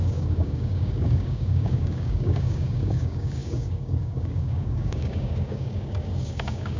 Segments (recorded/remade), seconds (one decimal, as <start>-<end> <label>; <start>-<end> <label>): 0.0-6.8 remade